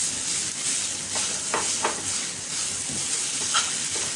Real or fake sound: real